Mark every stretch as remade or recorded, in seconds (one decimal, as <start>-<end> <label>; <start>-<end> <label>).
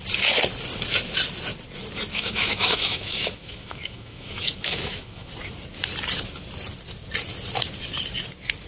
0.0-2.1 recorded; 2.1-5.3 remade; 5.3-8.7 recorded